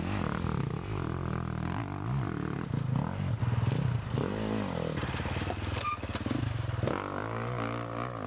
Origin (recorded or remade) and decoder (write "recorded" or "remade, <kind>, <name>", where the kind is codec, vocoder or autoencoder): recorded